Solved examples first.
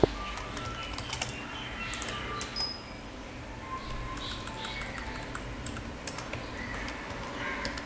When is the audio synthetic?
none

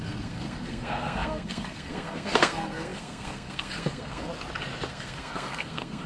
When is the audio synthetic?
0.0-4.3 (codec, SNAC); 4.9-6.1

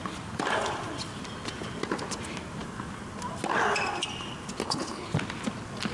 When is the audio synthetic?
4.6-5.1 (codec, HILCodec)

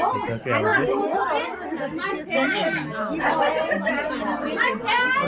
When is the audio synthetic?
none

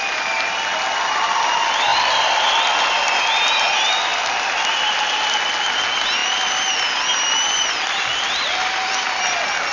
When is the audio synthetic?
1.9-3.0 (vocoder, BigVGAN v2); 4.1-5.2; 6.2-8.9

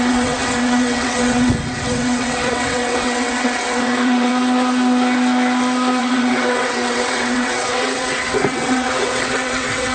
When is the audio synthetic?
0.0-4.3 (vocoder, WaveNeXt); 6.0-9.9

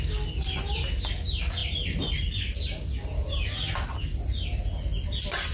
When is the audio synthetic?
none